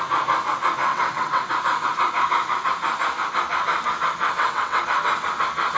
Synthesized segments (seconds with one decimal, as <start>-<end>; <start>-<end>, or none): 0.9-1.5; 4.2-4.8